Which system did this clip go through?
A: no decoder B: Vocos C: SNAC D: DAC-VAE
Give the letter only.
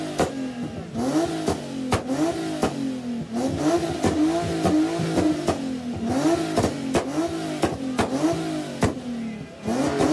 A